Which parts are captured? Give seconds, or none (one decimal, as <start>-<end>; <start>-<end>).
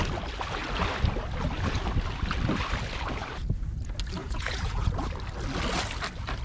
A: 0.0-4.2; 4.9-6.4